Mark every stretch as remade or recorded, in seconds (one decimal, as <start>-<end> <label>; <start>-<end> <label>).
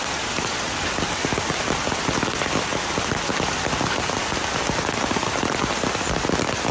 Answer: 0.0-6.7 recorded